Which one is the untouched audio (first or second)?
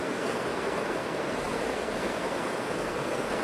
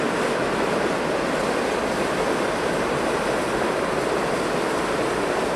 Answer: second